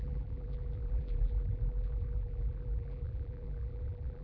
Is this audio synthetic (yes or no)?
yes